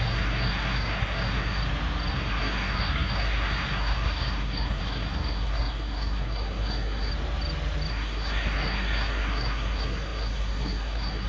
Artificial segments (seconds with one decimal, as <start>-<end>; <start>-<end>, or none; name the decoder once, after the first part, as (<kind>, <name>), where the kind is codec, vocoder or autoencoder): 0.0-1.6 (codec, SNAC); 2.1-7.1; 7.9-11.3